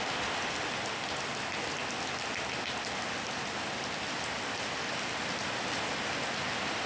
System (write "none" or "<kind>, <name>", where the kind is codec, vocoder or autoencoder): none